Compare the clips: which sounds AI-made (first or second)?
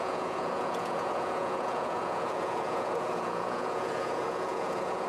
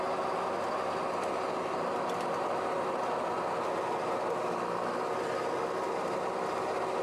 first